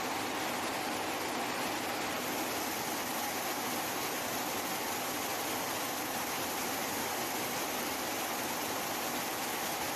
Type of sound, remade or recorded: recorded